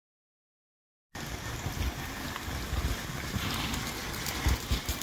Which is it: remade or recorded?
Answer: recorded